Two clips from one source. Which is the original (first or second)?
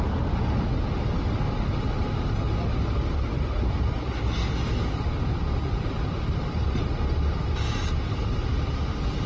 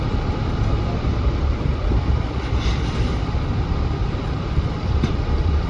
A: first